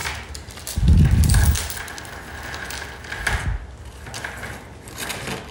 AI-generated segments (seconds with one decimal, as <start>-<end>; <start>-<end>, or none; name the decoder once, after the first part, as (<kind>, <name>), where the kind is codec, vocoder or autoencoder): none